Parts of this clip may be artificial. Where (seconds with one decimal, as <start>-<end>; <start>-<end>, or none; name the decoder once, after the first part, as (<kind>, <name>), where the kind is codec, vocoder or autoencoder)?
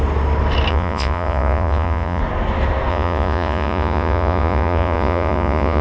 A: 0.7-2.2 (vocoder, Vocos); 2.9-5.8